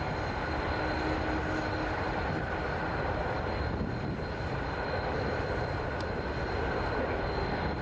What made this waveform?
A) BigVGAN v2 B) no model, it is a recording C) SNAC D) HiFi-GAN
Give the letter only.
B